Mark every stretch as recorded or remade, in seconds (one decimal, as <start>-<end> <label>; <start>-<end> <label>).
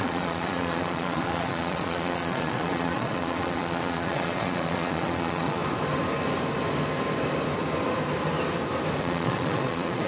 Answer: 0.0-5.6 remade; 5.6-9.0 recorded; 9.0-10.1 remade